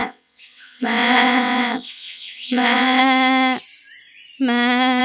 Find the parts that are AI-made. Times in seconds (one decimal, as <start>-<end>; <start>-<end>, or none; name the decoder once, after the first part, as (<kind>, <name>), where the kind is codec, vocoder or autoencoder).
0.0-3.0 (vocoder, WaveNeXt)